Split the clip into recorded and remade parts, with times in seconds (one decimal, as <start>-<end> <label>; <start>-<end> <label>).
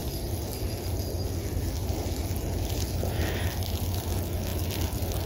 0.0-4.5 recorded; 4.5-5.3 remade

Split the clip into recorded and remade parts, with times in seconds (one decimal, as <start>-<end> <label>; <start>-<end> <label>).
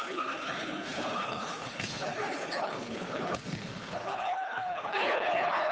0.0-5.7 remade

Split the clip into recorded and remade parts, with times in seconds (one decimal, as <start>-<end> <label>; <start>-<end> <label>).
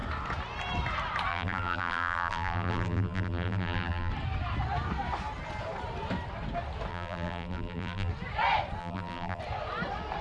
0.0-1.3 recorded; 1.3-4.1 remade; 4.1-6.9 recorded; 6.9-8.1 remade; 8.1-8.8 recorded; 8.8-9.4 remade; 9.4-10.2 recorded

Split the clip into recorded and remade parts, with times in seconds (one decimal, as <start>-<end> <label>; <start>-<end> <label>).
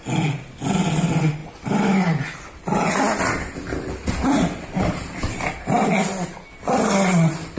0.0-7.6 recorded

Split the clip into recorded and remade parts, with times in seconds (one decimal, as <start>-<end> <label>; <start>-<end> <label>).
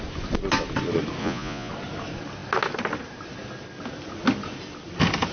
0.0-1.2 recorded; 1.2-1.7 remade; 1.7-5.3 recorded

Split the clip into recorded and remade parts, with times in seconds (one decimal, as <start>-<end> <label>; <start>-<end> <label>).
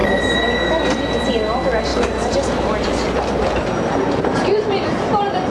0.0-1.9 recorded; 1.9-5.5 remade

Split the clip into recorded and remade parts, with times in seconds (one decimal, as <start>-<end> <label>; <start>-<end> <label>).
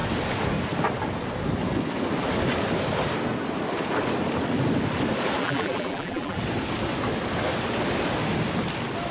0.0-5.4 recorded; 5.4-6.4 remade; 6.4-9.1 recorded